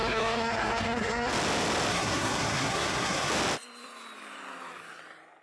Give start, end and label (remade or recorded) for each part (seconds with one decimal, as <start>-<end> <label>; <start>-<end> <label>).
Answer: 0.0-1.3 remade; 1.3-1.9 recorded; 1.9-3.3 remade; 3.3-5.4 recorded